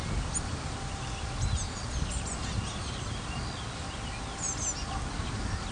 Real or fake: real